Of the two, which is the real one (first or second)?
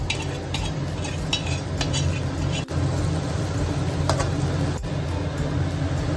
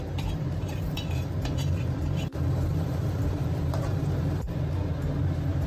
first